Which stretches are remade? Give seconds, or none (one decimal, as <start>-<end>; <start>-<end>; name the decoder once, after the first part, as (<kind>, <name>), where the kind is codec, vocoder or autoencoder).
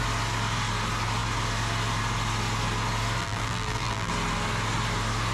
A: 3.2-4.1 (vocoder, BigVGAN v2)